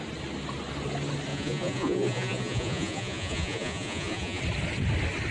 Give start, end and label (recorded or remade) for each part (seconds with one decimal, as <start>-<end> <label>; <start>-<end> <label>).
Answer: 0.0-1.3 recorded; 1.3-4.4 remade; 4.4-5.3 recorded